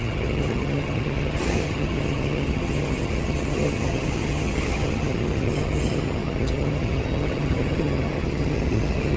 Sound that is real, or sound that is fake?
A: fake